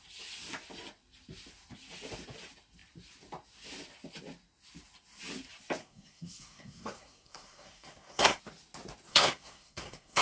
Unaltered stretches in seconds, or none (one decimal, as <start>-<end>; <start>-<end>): 0.0-5.8; 8.4-9.1